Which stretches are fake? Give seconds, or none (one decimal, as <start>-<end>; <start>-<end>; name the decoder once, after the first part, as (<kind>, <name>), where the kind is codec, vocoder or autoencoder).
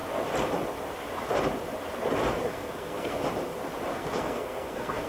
2.4-3.2 (codec, SNAC); 3.9-5.1